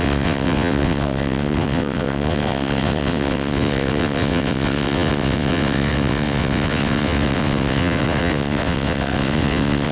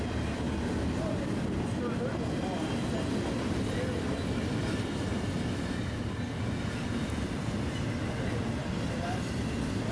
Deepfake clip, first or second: first